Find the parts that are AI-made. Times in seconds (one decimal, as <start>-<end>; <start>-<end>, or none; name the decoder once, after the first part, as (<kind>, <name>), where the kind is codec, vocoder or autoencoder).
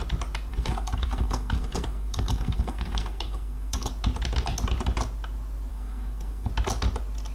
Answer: 0.5-3.9 (codec, SNAC); 5.7-6.5